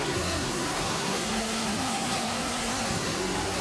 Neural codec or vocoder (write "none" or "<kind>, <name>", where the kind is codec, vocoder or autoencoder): codec, SNAC